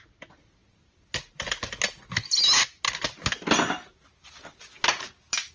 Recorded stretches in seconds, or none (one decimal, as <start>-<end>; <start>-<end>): 0.0-5.5